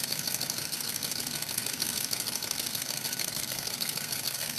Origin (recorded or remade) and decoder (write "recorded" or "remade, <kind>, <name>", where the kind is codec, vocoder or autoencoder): remade, codec, SNAC